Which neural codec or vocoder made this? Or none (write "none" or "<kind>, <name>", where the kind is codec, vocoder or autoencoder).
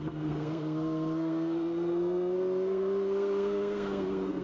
codec, SNAC